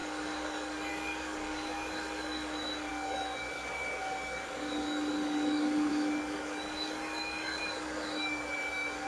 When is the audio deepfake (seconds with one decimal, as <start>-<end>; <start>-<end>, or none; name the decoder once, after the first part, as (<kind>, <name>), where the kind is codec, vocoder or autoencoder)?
0.0-9.1 (codec, DAC)